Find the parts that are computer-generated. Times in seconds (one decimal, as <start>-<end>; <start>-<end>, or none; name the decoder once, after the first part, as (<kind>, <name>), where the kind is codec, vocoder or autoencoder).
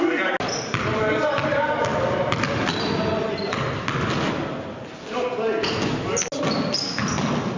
none